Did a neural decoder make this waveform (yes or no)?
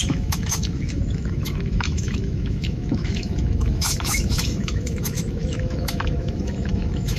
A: yes